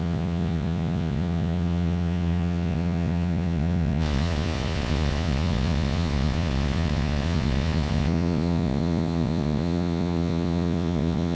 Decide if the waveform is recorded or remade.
remade